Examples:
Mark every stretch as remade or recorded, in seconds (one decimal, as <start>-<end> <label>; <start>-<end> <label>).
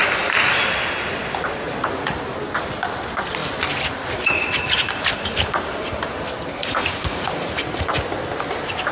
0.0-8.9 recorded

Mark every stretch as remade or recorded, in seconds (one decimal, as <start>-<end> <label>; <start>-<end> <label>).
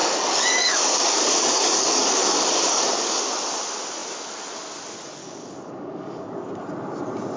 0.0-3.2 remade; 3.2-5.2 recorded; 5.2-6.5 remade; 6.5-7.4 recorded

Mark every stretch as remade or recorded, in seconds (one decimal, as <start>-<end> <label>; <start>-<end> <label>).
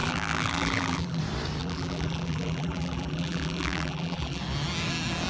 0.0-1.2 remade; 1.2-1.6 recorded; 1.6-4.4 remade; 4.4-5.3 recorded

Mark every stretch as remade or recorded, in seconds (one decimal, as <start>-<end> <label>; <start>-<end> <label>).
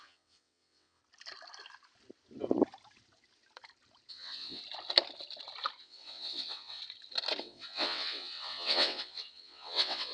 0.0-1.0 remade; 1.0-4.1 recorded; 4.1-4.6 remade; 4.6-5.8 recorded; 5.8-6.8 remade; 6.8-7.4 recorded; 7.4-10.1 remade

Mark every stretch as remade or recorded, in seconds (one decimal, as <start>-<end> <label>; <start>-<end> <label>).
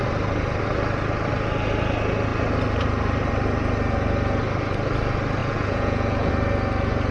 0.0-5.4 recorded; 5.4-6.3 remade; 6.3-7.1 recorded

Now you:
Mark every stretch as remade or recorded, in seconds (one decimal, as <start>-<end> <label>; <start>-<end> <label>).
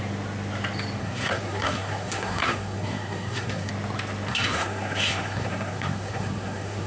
0.0-1.0 recorded; 1.0-3.7 remade; 3.7-4.3 recorded; 4.3-6.9 remade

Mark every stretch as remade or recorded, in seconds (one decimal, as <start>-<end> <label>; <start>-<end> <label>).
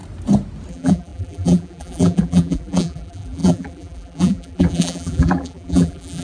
0.0-0.7 recorded; 0.7-6.2 remade